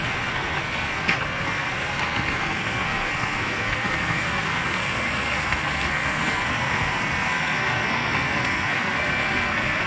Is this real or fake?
fake